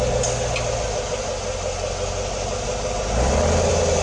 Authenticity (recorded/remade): recorded